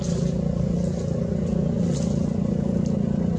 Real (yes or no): yes